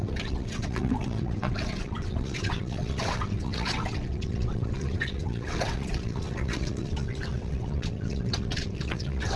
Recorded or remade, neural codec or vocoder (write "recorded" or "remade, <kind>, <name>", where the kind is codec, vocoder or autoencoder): remade, vocoder, WaveNeXt